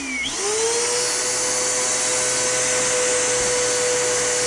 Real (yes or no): yes